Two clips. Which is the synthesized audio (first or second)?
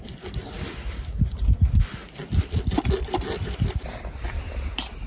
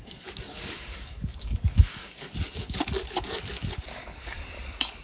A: second